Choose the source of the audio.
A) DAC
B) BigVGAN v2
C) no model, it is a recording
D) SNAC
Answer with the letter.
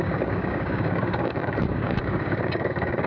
A